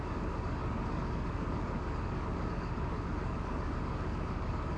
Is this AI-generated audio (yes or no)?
yes